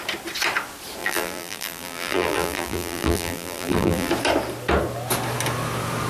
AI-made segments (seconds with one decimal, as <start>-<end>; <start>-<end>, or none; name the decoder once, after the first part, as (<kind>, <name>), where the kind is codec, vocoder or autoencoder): 1.0-4.1 (vocoder, BigVGAN v2)